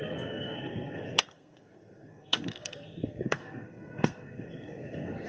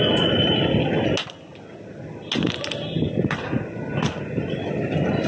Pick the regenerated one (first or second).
first